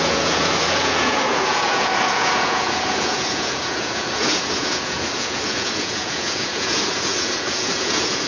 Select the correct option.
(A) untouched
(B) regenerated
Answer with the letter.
B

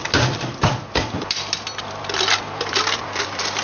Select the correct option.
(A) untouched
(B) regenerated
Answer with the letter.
B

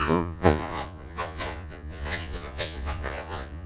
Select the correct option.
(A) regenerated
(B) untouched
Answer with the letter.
A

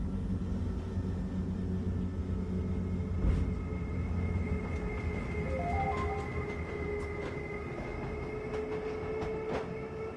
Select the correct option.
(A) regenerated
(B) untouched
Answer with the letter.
B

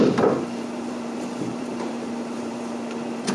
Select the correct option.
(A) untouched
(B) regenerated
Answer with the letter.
B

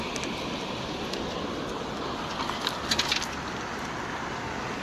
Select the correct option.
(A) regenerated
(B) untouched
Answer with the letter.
B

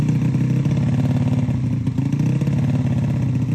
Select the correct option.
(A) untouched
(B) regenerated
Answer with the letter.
A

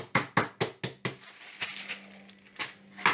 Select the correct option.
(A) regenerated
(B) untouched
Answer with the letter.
B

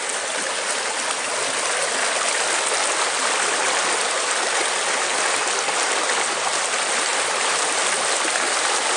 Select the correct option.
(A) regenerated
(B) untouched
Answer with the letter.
B